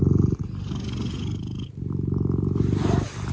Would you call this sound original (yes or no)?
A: yes